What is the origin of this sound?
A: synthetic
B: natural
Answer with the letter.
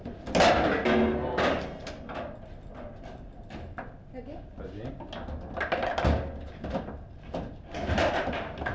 B